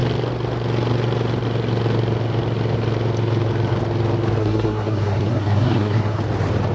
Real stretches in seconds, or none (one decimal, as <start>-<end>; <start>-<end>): 0.0-4.4; 6.2-6.7